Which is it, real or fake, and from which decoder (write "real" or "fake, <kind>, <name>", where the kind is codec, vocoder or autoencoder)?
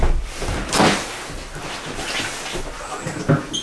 real